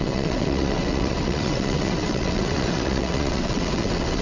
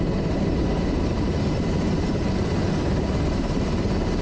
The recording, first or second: second